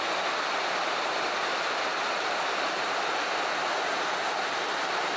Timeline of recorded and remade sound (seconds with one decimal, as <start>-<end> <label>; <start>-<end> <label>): 0.0-1.9 recorded; 1.9-5.2 remade